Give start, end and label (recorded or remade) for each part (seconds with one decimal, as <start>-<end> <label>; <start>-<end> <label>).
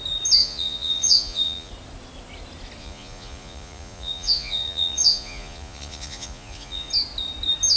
0.0-0.4 recorded; 0.4-1.7 remade; 1.7-2.8 recorded; 2.8-6.9 remade; 6.9-7.8 recorded